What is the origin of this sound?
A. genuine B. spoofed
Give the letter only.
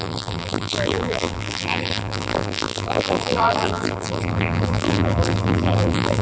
B